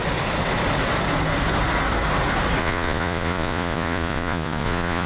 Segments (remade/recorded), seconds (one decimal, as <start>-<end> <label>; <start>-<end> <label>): 0.0-2.6 recorded; 2.6-5.1 remade